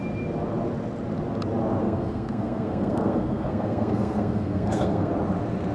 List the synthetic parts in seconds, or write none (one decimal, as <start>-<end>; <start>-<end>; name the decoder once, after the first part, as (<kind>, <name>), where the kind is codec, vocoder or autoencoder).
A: 1.8-5.1 (codec, SNAC)